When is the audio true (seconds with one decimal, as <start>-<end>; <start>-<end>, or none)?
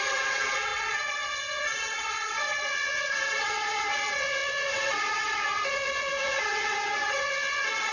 none